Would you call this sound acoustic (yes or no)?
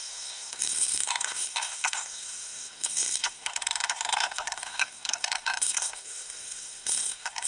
no